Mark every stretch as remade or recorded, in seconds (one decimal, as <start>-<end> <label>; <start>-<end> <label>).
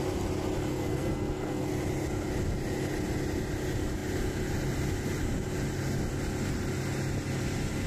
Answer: 0.0-0.7 recorded; 0.7-1.7 remade; 1.7-7.9 recorded